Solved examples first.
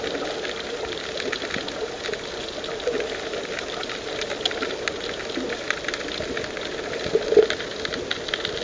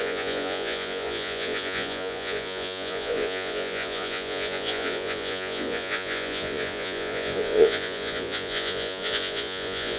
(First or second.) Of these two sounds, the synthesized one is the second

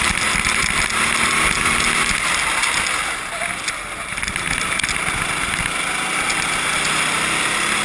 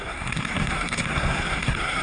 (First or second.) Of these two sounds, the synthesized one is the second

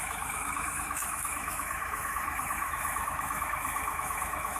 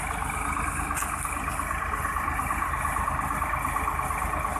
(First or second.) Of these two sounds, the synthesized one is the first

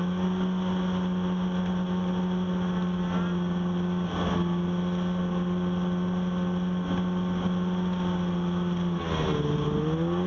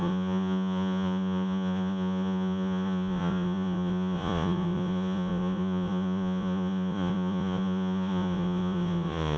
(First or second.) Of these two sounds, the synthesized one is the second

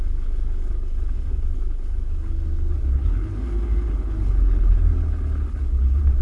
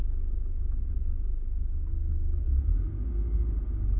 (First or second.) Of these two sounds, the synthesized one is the first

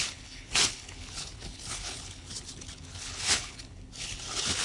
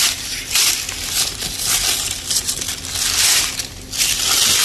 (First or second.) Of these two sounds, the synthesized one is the first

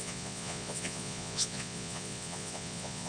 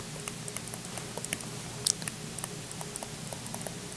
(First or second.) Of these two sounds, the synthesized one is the first